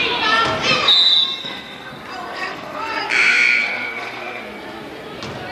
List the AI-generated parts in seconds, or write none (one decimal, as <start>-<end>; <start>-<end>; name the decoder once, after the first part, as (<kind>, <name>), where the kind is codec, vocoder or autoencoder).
1.4-1.9 (codec, SNAC); 2.3-3.0; 3.6-4.4